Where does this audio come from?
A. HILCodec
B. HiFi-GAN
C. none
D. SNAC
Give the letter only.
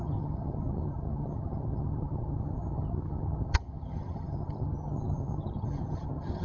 B